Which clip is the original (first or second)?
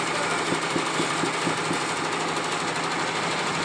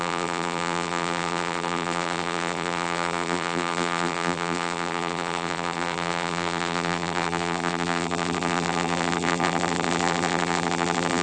first